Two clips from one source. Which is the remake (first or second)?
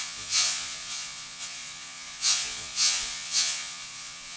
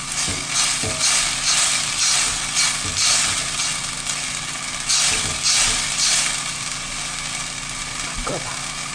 first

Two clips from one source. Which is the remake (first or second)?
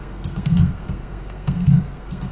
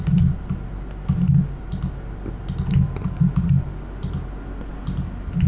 first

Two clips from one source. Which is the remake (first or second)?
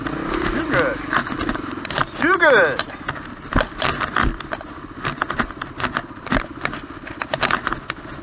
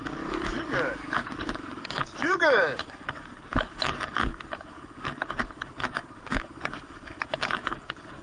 second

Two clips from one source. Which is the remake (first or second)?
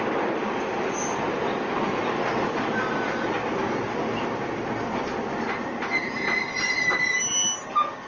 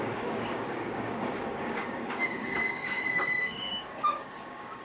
second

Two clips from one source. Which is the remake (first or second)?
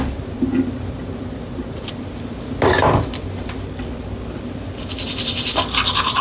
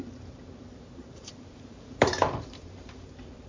second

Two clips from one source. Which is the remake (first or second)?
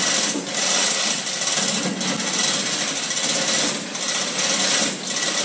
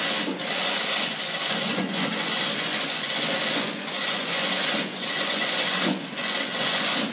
second